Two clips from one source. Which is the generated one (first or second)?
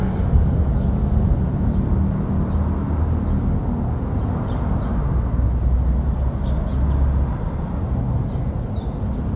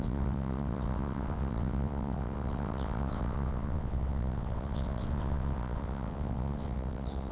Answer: second